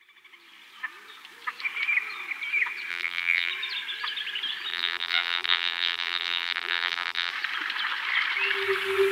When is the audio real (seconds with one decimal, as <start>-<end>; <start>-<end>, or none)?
0.0-2.9; 3.5-4.7; 7.3-9.1